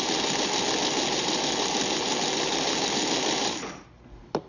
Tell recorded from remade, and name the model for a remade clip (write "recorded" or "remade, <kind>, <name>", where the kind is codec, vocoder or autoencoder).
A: recorded